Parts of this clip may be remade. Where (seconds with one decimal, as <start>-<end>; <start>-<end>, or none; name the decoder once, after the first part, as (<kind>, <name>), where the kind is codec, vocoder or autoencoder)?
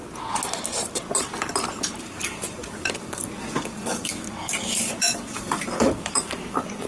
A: 2.0-6.9 (codec, DAC)